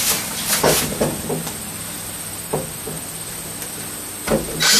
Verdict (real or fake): real